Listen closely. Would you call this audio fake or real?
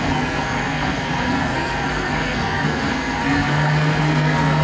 fake